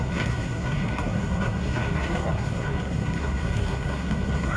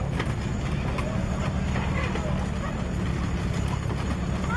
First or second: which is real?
second